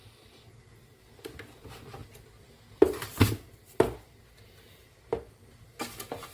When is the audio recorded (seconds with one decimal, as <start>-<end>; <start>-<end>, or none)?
0.0-4.8; 5.6-6.3